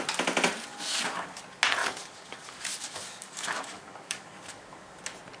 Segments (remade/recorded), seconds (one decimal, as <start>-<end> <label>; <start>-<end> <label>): 0.0-0.7 recorded; 0.7-1.4 remade; 1.4-1.8 recorded; 1.8-5.0 remade; 5.0-5.4 recorded